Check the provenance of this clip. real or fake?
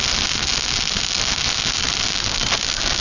real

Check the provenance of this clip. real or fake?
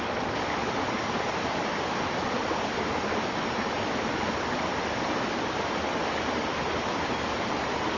real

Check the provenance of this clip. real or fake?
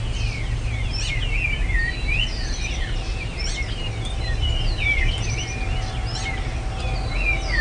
real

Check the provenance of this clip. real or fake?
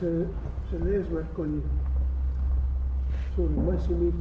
real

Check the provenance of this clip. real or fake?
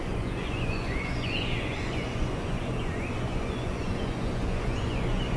fake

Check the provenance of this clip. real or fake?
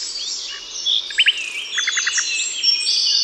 real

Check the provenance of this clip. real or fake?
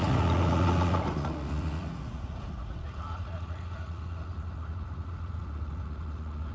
fake